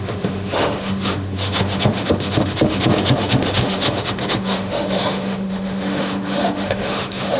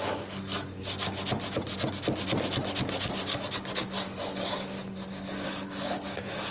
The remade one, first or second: first